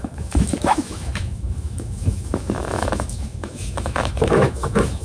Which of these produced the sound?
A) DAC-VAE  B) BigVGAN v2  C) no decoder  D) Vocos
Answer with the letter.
A